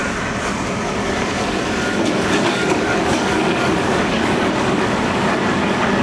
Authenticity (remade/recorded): remade